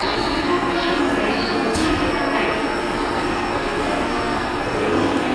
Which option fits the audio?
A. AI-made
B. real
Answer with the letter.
A